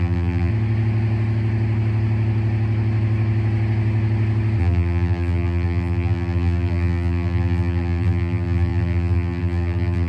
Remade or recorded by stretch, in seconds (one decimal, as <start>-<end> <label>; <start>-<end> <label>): 0.0-0.5 remade; 0.5-4.6 recorded; 4.6-10.1 remade